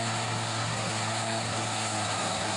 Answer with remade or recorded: remade